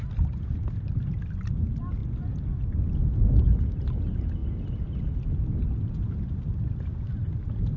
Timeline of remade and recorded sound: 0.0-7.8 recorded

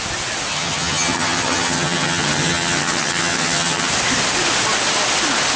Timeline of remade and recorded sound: 0.0-0.5 recorded; 0.5-3.9 remade; 3.9-5.6 recorded

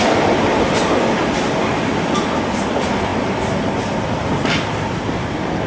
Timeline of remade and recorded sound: 0.0-5.7 recorded